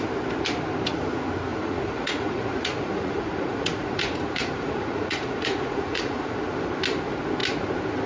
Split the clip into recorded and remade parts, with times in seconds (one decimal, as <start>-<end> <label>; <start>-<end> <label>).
0.0-1.5 recorded; 1.5-6.3 remade; 6.3-8.1 recorded